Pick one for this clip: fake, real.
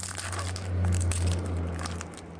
real